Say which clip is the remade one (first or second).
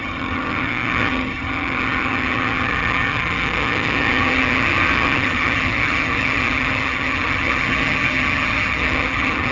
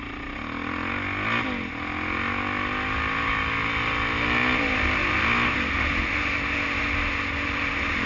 first